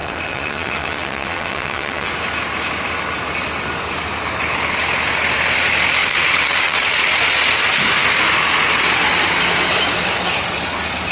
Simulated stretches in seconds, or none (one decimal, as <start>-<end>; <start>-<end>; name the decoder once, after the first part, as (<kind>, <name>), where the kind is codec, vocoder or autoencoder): 0.0-2.1 (vocoder, WaveNeXt); 6.0-7.0